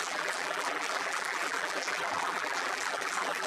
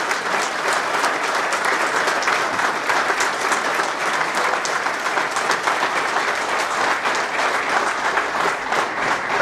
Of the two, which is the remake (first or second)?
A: first